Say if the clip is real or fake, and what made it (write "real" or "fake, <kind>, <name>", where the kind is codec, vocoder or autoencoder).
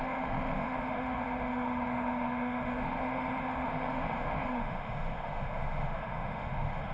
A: fake, autoencoder, DAC-VAE